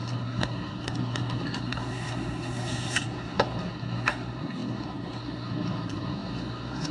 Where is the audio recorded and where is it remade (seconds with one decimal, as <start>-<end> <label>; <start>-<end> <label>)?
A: 0.0-6.9 remade